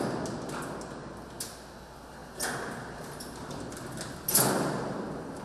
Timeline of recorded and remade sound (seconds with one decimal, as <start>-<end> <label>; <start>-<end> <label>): 0.0-5.4 recorded